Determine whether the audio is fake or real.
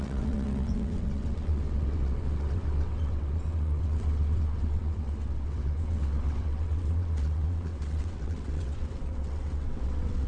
fake